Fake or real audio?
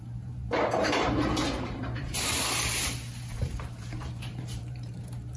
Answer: fake